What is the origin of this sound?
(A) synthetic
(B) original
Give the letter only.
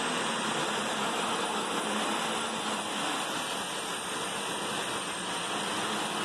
B